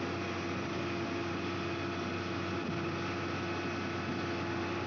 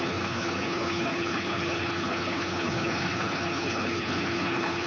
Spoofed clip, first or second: second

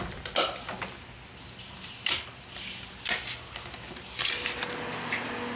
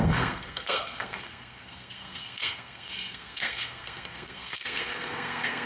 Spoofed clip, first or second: second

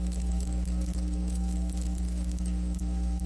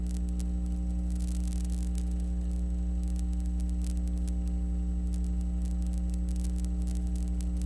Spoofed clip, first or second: first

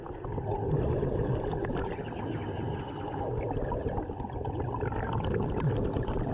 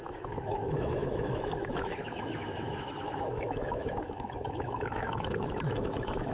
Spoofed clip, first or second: second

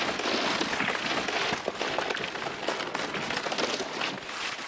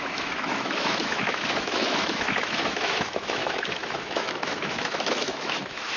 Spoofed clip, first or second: second